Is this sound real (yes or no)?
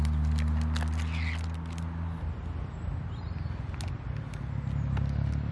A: yes